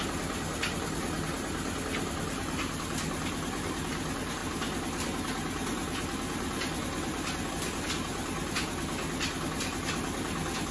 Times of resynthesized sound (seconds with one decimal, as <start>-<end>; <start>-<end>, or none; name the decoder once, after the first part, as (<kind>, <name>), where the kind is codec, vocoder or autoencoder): none